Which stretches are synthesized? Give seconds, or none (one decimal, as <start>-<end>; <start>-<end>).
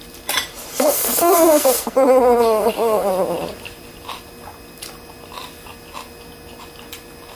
0.7-3.1